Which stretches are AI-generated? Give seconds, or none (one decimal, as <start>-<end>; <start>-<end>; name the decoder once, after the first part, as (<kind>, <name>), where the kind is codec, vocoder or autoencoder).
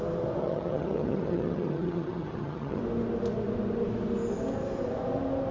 0.4-2.8 (vocoder, HiFi-GAN)